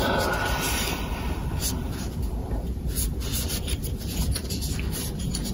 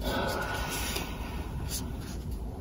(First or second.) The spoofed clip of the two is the first